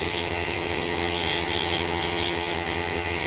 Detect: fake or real fake